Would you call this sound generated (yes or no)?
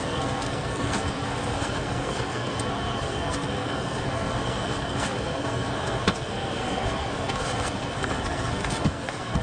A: yes